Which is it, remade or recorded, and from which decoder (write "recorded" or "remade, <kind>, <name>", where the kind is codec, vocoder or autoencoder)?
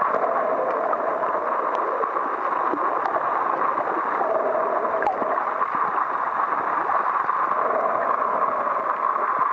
recorded